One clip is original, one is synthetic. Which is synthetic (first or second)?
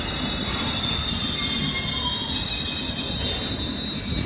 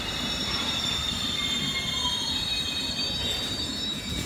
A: second